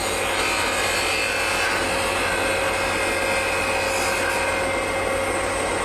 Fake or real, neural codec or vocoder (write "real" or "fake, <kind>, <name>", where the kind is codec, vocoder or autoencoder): real